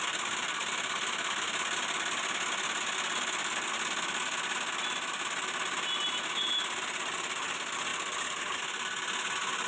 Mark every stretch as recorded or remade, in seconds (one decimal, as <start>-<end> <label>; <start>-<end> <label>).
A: 0.0-9.7 recorded

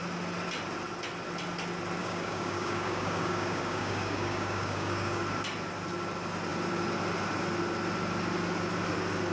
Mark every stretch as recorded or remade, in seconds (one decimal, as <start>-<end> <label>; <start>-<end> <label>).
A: 0.0-2.0 recorded; 2.0-5.2 remade; 5.2-9.3 recorded

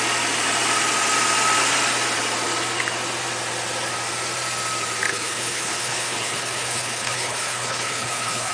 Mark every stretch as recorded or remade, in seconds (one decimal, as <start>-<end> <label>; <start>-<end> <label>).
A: 0.0-5.1 recorded; 5.1-8.5 remade

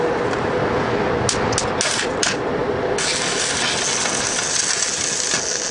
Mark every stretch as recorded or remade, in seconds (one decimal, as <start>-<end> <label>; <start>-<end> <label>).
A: 0.0-5.7 recorded

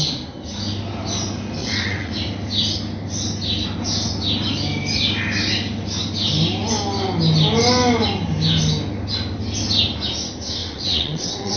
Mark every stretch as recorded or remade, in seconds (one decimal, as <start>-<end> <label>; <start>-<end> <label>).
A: 0.0-1.6 recorded; 1.6-2.1 remade; 2.1-10.6 recorded; 10.6-11.6 remade

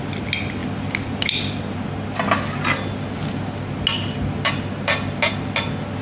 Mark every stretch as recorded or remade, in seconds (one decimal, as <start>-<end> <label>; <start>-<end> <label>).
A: 0.0-6.0 recorded

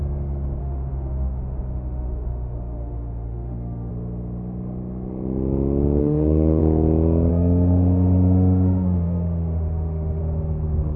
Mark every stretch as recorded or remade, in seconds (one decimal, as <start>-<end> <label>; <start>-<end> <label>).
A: 0.0-0.6 recorded; 0.6-3.9 remade; 3.9-6.0 recorded; 6.0-6.6 remade; 6.6-7.3 recorded; 7.3-10.2 remade; 10.2-11.0 recorded

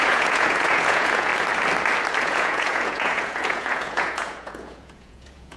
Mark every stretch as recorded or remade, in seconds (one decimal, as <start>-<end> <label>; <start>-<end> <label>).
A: 0.0-1.3 remade; 1.3-2.2 recorded; 2.2-5.6 remade